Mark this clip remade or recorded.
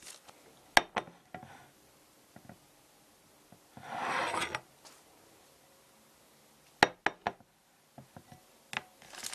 recorded